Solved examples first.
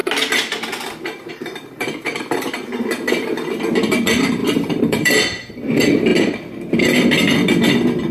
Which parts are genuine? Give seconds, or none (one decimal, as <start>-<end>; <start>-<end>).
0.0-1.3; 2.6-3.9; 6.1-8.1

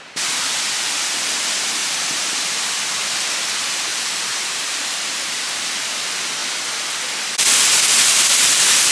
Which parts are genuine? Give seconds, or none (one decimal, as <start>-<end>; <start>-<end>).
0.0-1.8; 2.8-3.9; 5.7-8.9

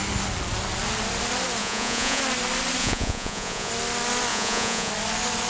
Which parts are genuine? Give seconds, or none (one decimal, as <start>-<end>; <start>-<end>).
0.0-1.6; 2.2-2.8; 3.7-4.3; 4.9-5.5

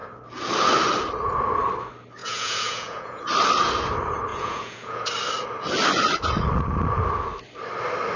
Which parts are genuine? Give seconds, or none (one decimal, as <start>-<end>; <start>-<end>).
0.0-2.2; 3.2-4.3; 5.1-8.2

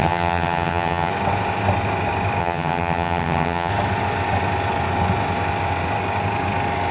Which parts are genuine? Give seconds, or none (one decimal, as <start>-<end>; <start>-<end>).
1.1-2.4; 3.7-6.9

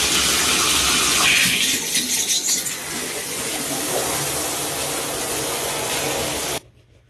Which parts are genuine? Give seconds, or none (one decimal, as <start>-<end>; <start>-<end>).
0.0-1.0; 1.9-2.4; 3.5-5.3; 6.0-7.1

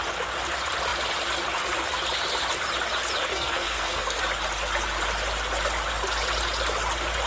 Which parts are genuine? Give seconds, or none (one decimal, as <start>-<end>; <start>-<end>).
0.0-3.3; 4.2-7.3